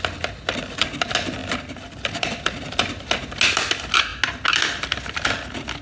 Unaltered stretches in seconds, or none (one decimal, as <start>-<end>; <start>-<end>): 0.0-5.8